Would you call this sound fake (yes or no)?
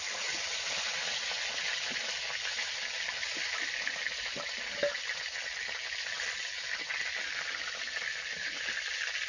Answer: no